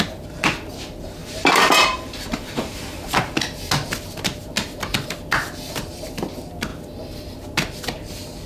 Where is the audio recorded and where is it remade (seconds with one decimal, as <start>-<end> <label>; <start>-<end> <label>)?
0.0-1.2 recorded; 1.2-3.2 remade; 3.2-8.5 recorded